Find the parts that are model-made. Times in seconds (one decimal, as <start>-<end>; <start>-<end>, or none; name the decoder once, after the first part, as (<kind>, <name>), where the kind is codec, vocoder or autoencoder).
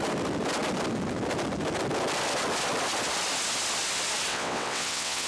4.3-5.3 (vocoder, WaveNeXt)